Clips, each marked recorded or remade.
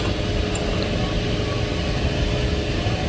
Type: recorded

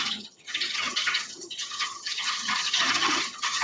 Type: remade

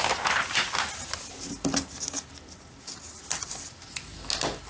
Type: recorded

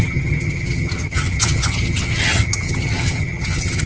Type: remade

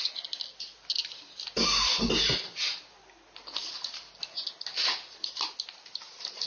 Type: recorded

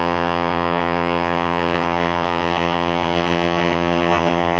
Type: remade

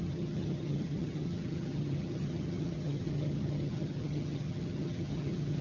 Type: remade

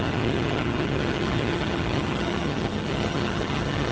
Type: remade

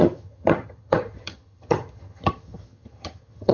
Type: remade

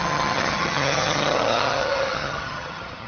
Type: remade